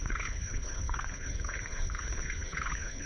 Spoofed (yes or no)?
yes